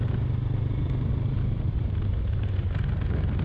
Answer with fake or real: real